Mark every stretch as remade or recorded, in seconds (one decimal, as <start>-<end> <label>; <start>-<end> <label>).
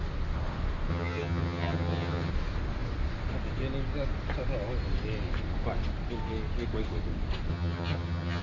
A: 0.0-0.9 recorded; 0.9-2.3 remade; 2.3-7.5 recorded; 7.5-8.4 remade